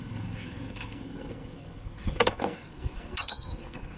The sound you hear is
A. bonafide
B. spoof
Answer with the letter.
B